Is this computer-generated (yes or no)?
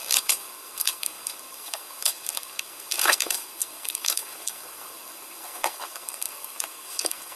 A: yes